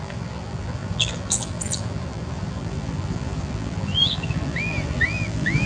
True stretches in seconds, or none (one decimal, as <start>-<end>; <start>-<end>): none